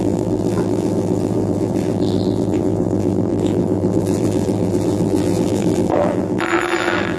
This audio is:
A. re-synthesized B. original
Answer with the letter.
A